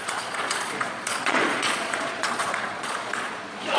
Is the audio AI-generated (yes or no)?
yes